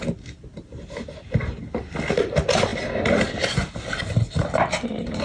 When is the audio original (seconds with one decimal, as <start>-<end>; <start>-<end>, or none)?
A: 0.0-5.2